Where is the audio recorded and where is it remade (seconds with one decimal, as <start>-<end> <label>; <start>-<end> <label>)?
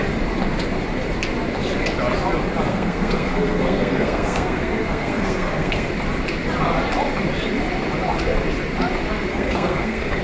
0.0-2.7 recorded; 2.7-5.9 remade; 5.9-9.3 recorded; 9.3-10.2 remade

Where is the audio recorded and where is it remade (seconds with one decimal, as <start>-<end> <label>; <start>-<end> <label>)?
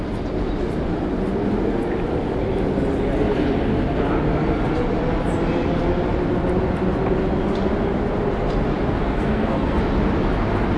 0.0-9.0 recorded; 9.0-9.8 remade; 9.8-10.8 recorded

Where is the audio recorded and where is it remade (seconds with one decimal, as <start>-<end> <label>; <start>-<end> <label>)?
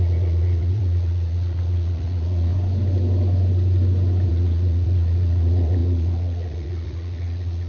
0.0-2.5 remade; 2.5-4.3 recorded; 4.3-7.7 remade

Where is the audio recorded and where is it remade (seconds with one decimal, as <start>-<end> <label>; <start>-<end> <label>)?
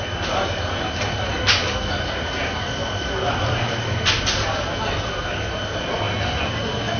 0.0-7.0 recorded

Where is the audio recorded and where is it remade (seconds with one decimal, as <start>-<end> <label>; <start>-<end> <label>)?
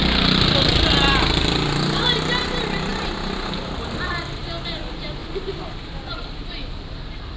0.0-7.4 recorded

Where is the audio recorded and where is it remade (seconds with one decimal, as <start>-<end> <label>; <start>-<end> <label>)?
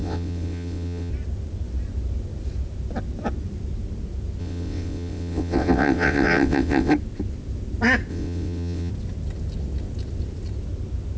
0.0-1.1 remade; 1.1-4.4 recorded; 4.4-6.9 remade; 6.9-8.1 recorded; 8.1-8.9 remade; 8.9-11.2 recorded